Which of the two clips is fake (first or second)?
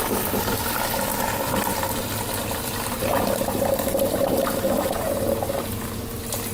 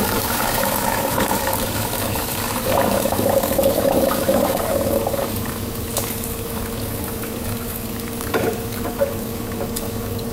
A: second